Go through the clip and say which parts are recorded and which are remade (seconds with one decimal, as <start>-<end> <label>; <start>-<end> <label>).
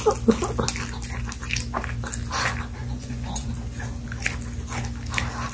0.0-2.8 recorded; 2.8-3.5 remade; 3.5-5.5 recorded